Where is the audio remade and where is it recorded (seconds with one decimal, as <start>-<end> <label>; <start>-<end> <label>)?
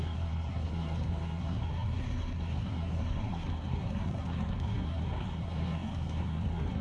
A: 0.0-6.8 remade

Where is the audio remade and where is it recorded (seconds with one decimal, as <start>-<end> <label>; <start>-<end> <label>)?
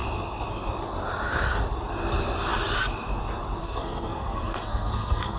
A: 0.0-3.6 recorded; 3.6-5.4 remade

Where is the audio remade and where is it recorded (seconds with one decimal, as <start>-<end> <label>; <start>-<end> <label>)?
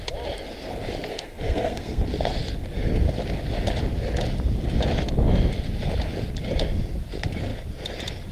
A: 0.0-1.1 recorded; 1.1-2.0 remade; 2.0-8.3 recorded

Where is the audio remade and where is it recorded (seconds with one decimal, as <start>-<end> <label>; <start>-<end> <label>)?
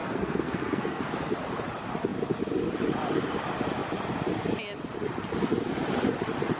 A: 0.0-1.0 remade; 1.0-6.6 recorded